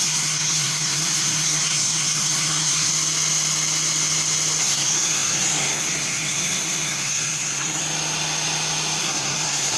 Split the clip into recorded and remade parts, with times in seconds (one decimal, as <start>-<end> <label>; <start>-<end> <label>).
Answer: 0.0-2.9 remade; 2.9-4.6 recorded; 4.6-7.8 remade; 7.8-9.0 recorded; 9.0-9.8 remade